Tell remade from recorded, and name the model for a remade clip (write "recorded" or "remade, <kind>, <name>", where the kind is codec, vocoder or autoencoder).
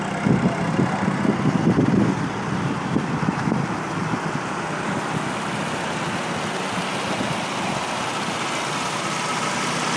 recorded